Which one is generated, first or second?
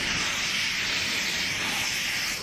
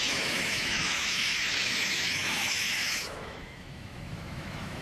second